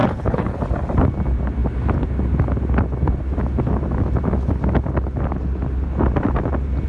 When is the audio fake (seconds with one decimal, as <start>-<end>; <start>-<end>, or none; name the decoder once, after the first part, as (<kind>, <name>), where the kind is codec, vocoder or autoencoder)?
0.0-0.6 (codec, HILCodec)